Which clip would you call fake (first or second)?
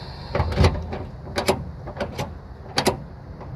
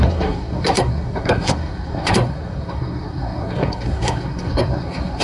second